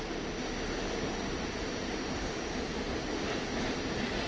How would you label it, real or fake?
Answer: real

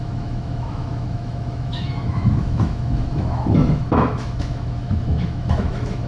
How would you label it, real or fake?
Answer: fake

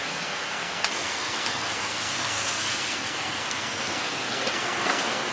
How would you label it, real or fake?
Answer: fake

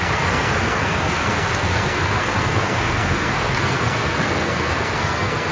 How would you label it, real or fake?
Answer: fake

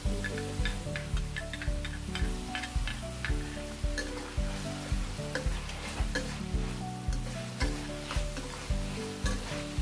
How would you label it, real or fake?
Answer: real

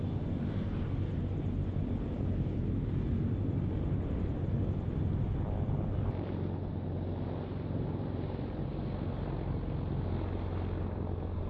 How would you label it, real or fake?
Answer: real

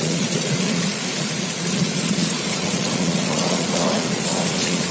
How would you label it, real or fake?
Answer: fake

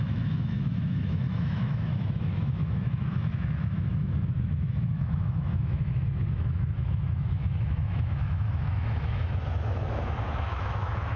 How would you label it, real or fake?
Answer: fake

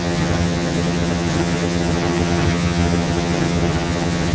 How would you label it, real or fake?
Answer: fake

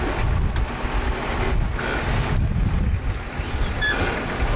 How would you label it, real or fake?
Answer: real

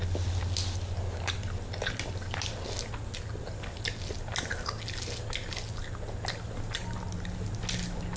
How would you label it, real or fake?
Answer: real